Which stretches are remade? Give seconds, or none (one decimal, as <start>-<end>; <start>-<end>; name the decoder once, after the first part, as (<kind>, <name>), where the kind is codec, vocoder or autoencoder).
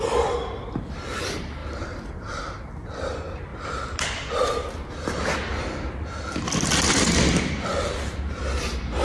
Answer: none